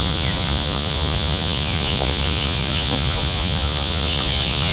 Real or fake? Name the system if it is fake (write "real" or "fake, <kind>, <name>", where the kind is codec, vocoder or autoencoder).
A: fake, vocoder, Vocos